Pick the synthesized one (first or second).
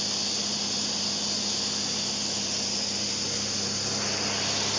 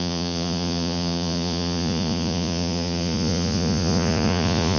second